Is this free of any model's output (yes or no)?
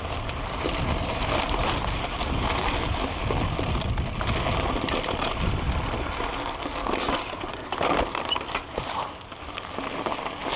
yes